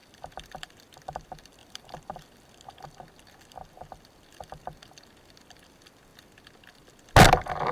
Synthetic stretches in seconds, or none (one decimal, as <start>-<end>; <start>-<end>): 0.0-0.7; 1.6-2.5